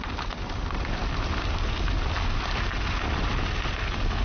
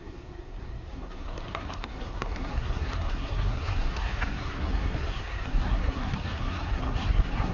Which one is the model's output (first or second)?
second